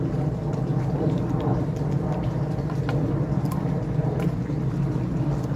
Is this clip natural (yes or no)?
yes